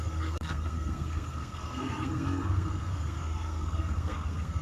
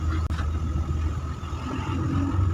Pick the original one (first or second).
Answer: second